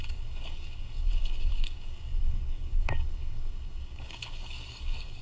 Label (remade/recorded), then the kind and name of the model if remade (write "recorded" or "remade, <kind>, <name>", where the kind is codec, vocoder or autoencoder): remade, codec, DAC